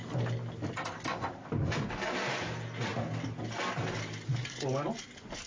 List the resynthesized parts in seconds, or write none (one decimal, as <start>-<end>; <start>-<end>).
none